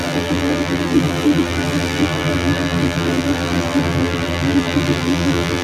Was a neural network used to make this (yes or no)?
yes